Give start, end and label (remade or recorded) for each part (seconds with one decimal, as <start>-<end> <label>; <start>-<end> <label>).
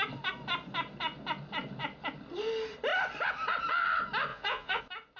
0.0-4.3 recorded; 4.3-4.8 remade; 4.8-5.2 recorded